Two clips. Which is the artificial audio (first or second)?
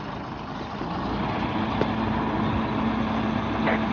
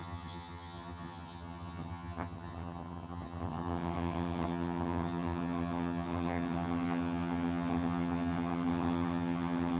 second